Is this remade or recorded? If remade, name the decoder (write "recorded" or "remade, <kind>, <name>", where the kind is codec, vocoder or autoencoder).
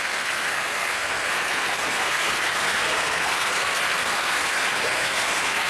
remade, codec, SNAC